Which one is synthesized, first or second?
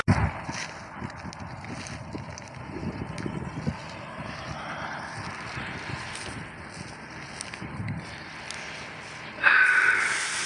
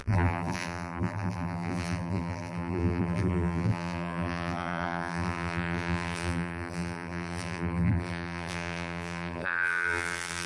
second